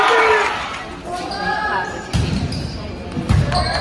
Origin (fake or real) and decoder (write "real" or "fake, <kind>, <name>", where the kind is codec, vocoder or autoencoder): real